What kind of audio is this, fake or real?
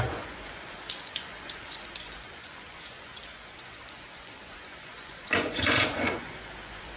fake